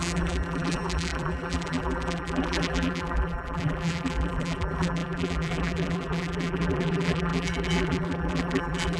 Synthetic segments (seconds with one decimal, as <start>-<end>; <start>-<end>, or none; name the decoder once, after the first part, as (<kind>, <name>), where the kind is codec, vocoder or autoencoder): 0.0-9.0 (vocoder, BigVGAN v2)